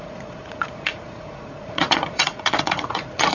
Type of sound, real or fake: fake